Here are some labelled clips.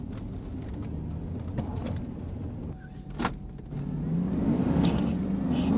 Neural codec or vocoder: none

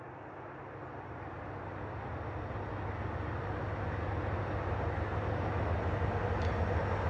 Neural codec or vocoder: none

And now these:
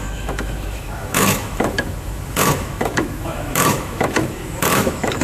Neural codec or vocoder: autoencoder, DAC-VAE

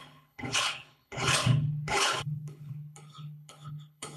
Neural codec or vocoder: codec, HILCodec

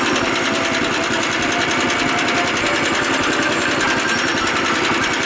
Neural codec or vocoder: none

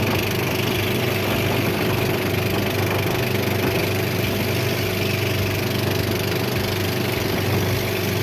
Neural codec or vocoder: none